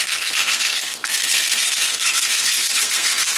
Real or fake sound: fake